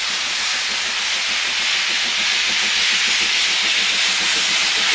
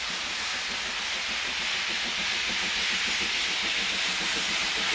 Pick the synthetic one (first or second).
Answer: second